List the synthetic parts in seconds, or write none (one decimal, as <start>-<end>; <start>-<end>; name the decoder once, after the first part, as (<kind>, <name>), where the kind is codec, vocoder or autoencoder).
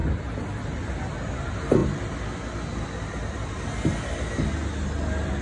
none